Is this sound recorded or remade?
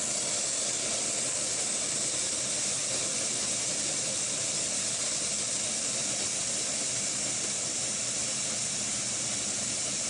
recorded